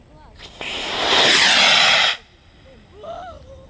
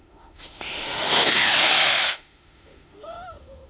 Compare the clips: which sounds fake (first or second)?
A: second